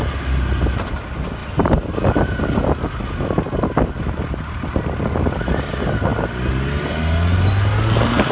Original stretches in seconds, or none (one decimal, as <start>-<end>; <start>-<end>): 0.0-8.3